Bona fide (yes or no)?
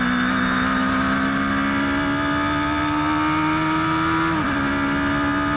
yes